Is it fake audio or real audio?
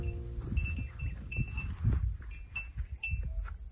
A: real